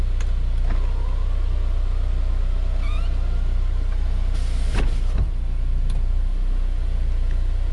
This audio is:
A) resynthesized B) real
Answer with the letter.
B